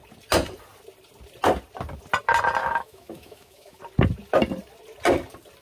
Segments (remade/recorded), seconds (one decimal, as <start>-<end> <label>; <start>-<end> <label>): 0.0-2.6 recorded; 2.6-3.8 remade; 3.8-5.6 recorded